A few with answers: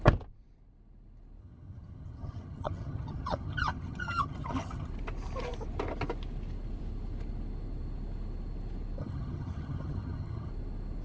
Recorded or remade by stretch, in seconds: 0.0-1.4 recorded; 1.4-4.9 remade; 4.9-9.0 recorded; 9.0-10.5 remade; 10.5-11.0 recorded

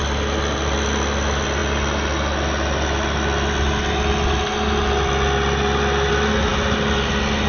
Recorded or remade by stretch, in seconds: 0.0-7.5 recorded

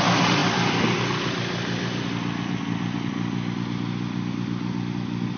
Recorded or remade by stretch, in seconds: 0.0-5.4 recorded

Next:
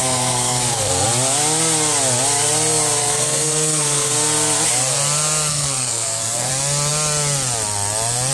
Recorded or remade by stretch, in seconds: 0.0-0.9 remade; 0.9-3.0 recorded; 3.0-4.1 remade; 4.1-5.5 recorded; 5.5-6.5 remade; 6.5-8.3 recorded

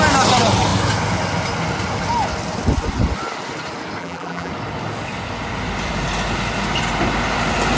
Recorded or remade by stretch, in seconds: 0.0-4.0 recorded; 4.0-4.5 remade; 4.5-7.8 recorded

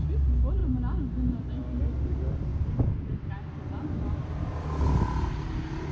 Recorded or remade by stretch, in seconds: 0.0-5.9 recorded